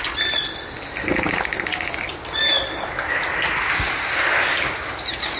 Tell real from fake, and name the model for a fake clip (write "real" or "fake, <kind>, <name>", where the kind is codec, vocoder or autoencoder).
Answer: real